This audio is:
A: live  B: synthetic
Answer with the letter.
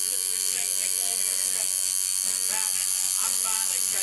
A